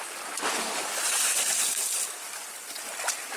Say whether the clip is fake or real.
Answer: real